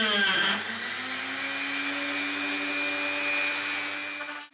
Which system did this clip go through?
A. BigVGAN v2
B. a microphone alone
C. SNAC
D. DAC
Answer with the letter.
B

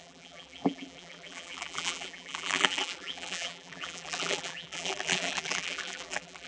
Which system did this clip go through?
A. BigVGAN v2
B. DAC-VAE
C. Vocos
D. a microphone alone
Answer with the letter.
A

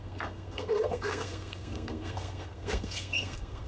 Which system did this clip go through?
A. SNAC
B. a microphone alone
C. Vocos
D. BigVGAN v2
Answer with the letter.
A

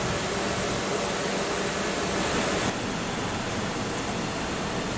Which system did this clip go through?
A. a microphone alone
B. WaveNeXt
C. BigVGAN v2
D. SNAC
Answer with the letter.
A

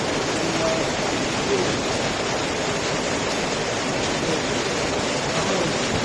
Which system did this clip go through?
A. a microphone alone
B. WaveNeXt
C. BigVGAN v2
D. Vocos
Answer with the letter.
A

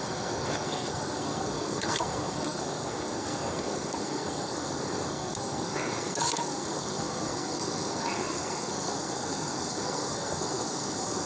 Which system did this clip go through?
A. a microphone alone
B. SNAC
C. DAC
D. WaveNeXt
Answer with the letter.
B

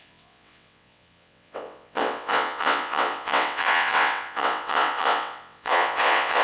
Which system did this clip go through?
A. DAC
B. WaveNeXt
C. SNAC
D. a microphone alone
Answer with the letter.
B